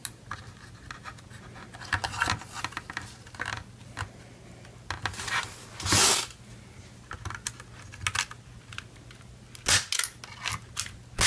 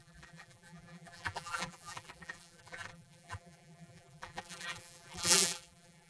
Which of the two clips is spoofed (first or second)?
second